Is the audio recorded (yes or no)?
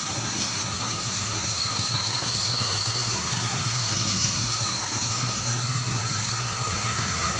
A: no